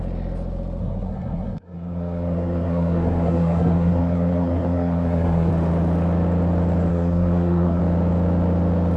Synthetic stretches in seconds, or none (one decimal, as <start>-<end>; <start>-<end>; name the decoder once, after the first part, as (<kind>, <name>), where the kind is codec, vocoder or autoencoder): 0.8-5.5 (codec, SNAC); 6.9-7.8